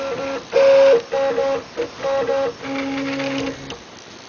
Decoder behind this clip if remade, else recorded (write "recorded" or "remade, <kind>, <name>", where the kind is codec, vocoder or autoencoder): recorded